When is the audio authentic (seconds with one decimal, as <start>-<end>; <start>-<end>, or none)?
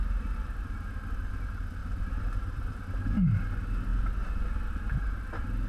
0.0-1.8; 2.8-5.7